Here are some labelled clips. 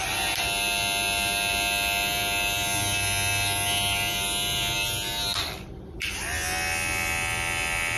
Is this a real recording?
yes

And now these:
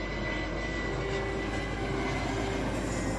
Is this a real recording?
yes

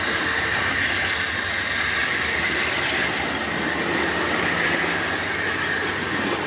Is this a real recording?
yes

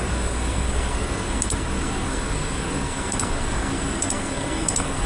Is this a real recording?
no